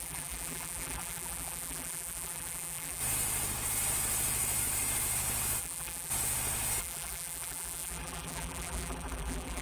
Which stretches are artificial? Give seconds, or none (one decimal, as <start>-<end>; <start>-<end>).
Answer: 0.0-3.0; 5.6-6.1; 6.8-9.6